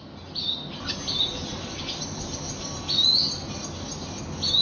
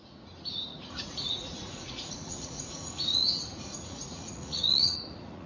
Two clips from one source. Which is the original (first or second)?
first